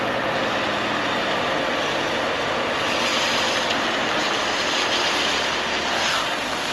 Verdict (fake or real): real